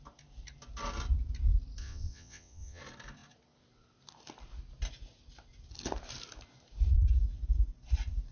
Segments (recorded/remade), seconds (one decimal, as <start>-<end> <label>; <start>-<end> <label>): 0.0-1.8 recorded; 1.8-2.8 remade; 2.8-8.3 recorded